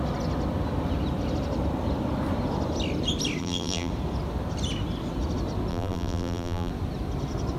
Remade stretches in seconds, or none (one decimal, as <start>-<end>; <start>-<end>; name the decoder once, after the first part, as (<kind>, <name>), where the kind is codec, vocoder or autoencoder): 3.4-3.9 (vocoder, BigVGAN v2); 5.7-6.7